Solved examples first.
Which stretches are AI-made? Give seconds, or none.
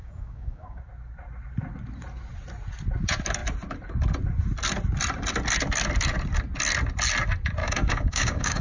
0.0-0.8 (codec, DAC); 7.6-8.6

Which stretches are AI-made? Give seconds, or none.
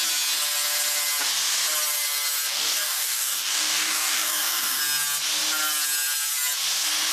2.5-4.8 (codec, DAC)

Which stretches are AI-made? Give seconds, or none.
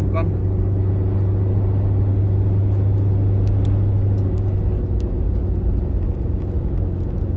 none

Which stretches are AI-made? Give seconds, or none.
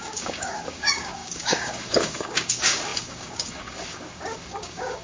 0.0-5.0 (codec, DAC)